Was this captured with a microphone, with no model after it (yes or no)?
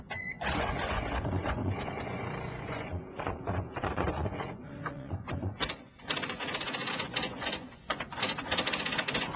no